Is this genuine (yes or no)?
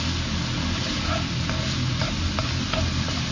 yes